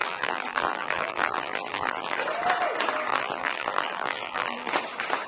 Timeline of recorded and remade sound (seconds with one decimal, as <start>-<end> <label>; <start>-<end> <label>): 0.0-2.2 remade; 2.2-3.1 recorded; 3.1-4.7 remade; 4.7-5.3 recorded